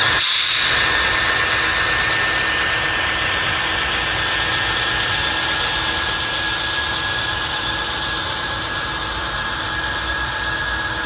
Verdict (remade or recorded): recorded